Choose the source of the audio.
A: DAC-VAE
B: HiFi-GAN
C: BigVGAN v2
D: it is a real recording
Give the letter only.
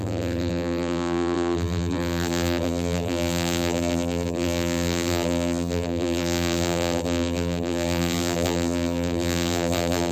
C